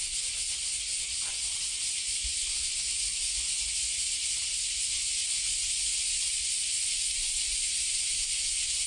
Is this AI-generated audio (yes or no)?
no